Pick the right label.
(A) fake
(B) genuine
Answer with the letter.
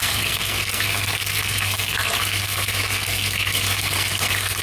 A